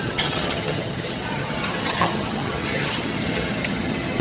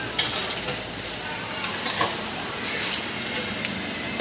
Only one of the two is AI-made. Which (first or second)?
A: first